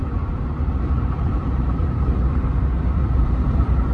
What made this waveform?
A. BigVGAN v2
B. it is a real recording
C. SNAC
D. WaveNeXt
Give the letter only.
A